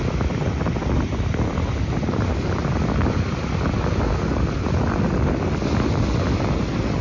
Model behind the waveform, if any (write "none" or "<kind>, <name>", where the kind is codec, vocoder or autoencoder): none